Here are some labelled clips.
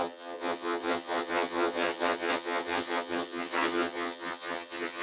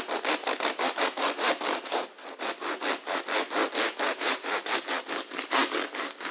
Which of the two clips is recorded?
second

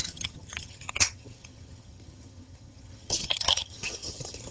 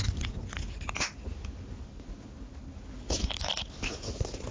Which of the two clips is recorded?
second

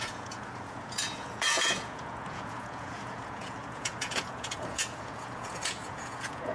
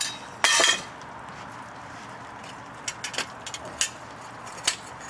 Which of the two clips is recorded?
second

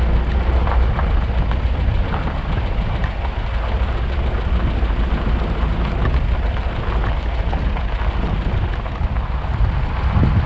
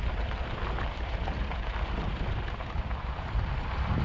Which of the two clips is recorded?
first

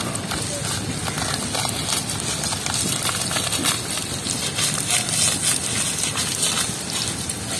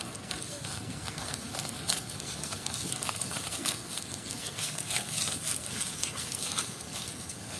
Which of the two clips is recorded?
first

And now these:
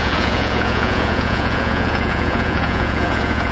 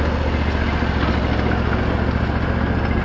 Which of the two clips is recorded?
second